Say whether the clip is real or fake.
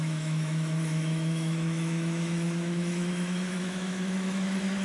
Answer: fake